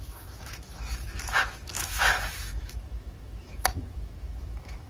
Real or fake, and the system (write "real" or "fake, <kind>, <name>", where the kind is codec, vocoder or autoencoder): fake, autoencoder, DAC-VAE